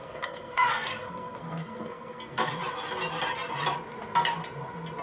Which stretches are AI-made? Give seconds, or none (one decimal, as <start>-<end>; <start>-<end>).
0.0-2.5

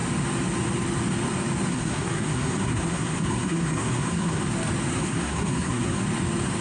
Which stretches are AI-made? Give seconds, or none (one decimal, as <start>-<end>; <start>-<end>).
1.7-4.4; 4.9-6.0